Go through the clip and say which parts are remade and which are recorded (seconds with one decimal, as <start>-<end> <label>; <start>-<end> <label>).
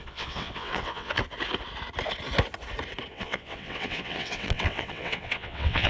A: 0.0-1.2 remade; 1.2-3.1 recorded; 3.1-5.9 remade